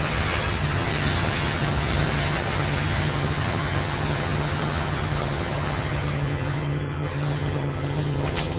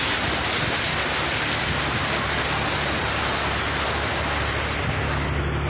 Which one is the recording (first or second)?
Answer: second